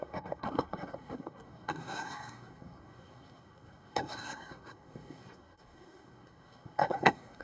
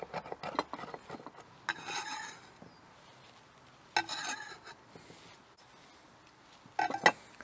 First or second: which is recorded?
second